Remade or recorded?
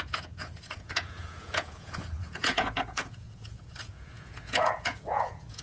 remade